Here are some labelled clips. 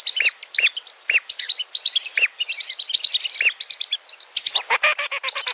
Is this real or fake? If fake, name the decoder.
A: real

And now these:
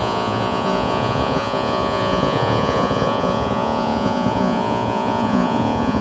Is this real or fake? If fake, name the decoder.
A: fake, vocoder, Vocos